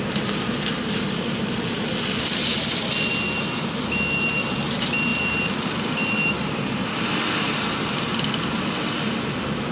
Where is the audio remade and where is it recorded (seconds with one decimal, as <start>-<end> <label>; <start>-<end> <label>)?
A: 0.0-9.7 recorded